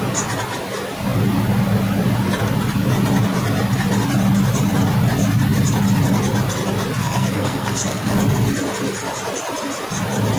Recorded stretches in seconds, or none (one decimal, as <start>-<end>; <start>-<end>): 0.0-7.0; 8.2-10.4

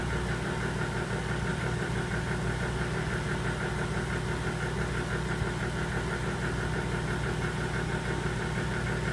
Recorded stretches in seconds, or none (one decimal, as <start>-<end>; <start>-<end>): 0.0-1.5; 2.2-9.1

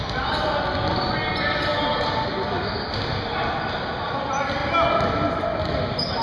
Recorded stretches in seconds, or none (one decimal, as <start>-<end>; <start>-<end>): 0.0-6.2

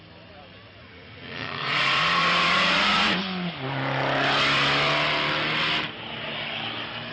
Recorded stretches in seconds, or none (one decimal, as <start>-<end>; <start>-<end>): 0.0-0.8; 3.2-7.1